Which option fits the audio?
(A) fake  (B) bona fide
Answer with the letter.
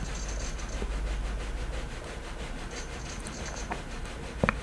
B